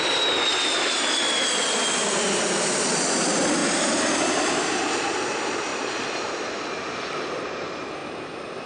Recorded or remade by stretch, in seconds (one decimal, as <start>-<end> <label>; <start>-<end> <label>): 0.0-3.6 recorded; 3.6-4.8 remade; 4.8-8.7 recorded